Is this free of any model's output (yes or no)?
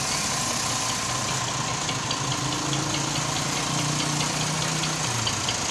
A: yes